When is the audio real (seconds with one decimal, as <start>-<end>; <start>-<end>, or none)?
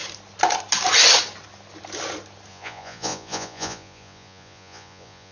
0.0-2.5